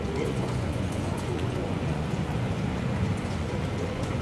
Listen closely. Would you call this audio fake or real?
fake